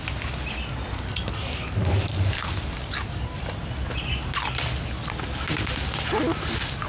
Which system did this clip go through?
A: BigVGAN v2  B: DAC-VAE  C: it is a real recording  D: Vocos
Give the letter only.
C